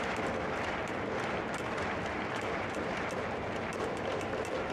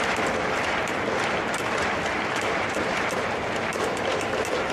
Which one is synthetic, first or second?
second